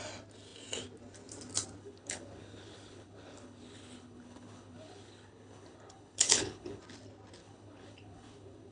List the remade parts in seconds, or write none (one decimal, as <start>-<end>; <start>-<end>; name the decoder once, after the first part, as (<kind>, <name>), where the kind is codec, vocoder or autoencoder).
1.8-6.8 (codec, HILCodec); 7.4-8.7